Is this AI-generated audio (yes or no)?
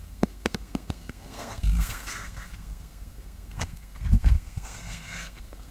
yes